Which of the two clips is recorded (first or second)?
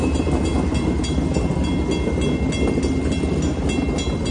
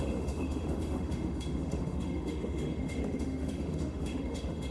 first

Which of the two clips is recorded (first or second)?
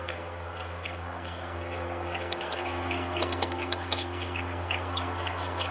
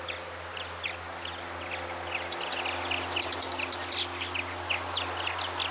second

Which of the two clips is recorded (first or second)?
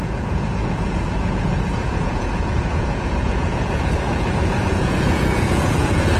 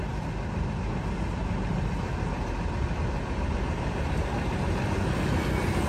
second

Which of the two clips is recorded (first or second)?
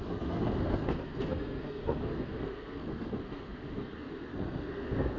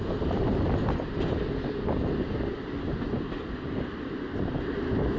second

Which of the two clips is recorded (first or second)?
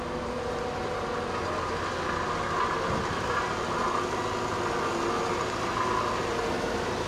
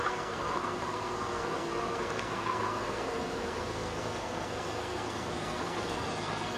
first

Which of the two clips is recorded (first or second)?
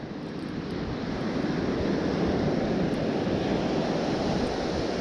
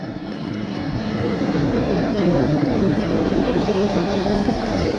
first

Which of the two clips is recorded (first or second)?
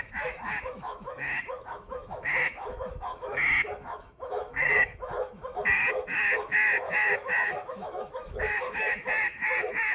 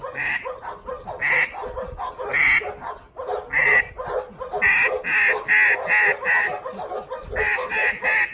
second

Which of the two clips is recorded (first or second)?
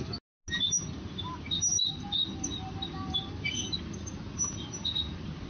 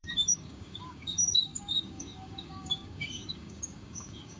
first